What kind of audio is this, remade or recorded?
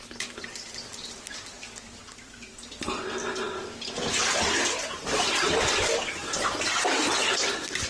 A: recorded